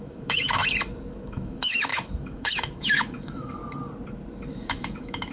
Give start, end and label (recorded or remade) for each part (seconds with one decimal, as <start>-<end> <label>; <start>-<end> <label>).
0.0-0.6 remade; 0.6-1.1 recorded; 1.1-3.6 remade; 3.6-4.5 recorded; 4.5-5.3 remade